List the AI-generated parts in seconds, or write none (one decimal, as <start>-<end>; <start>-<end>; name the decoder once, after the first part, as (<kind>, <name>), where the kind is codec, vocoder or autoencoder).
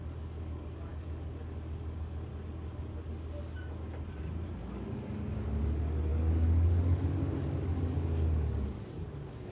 0.0-2.3 (codec, DAC); 4.6-9.5